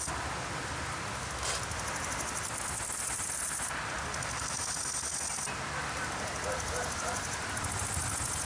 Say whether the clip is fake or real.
real